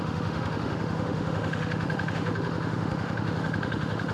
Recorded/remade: remade